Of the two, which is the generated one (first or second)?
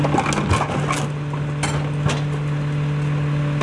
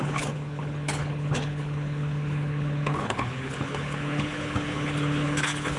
second